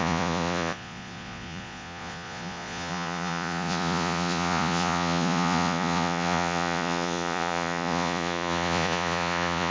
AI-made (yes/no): yes